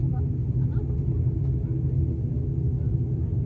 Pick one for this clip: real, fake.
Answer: real